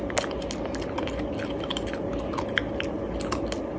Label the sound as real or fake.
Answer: real